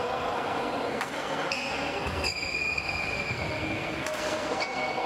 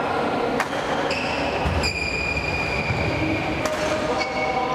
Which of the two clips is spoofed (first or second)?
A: first